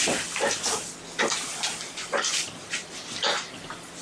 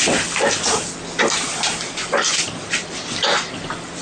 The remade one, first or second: first